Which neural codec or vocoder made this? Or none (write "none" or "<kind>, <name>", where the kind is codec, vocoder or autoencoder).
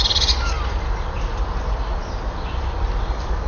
none